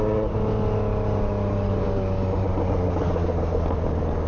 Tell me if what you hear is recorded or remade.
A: recorded